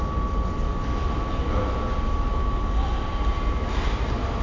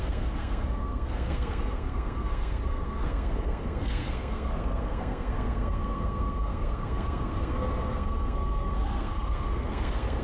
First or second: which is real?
first